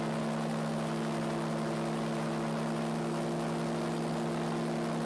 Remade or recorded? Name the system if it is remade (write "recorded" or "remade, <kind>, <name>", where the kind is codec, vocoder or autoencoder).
recorded